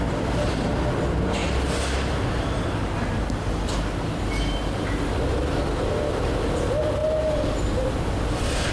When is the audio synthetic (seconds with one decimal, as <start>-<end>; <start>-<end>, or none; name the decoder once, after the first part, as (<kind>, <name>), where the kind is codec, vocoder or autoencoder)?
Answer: none